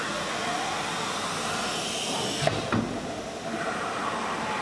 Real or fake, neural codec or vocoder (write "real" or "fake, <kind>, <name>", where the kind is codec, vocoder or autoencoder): real